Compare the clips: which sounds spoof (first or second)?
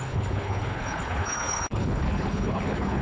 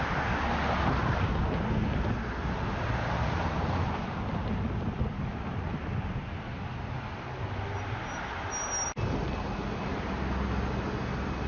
first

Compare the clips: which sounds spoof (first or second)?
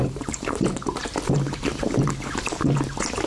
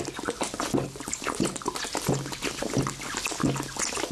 first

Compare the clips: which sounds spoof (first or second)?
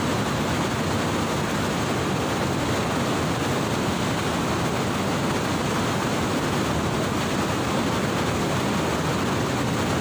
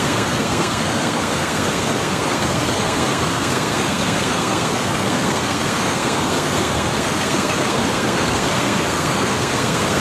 second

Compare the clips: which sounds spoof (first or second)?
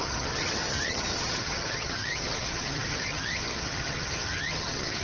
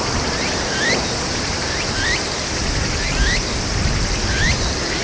first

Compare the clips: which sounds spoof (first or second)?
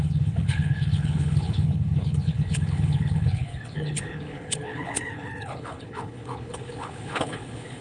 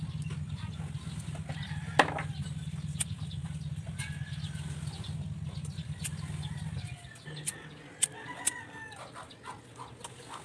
first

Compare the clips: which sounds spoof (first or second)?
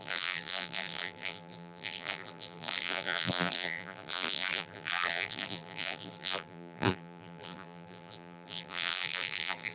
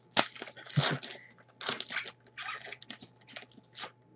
first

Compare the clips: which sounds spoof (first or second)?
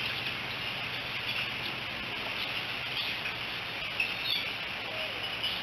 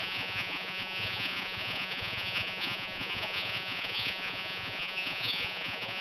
second